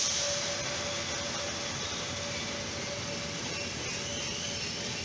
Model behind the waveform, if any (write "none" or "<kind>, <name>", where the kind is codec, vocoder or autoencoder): none